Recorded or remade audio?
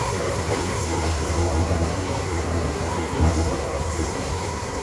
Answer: remade